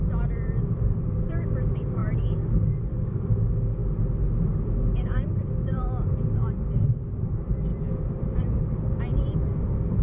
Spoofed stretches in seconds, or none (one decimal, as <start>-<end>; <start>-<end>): 0.0-2.0; 2.7-3.8; 4.4-10.0